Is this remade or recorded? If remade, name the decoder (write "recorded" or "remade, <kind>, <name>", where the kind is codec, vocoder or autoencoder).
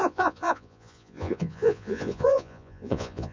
remade, vocoder, Vocos